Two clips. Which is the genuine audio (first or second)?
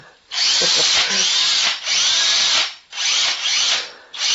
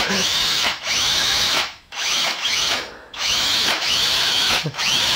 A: first